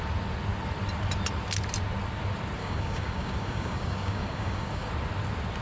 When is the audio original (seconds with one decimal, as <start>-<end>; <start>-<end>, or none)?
0.0-2.6; 4.9-5.6